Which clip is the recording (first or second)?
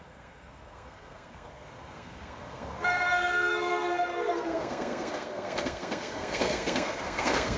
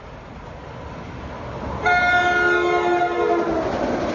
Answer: second